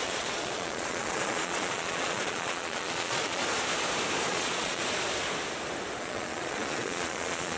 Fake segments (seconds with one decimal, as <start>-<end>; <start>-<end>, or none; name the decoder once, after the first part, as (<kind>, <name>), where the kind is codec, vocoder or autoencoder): 0.0-3.4 (vocoder, Vocos); 4.3-4.8; 6.0-7.6